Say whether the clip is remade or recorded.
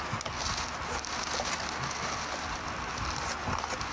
recorded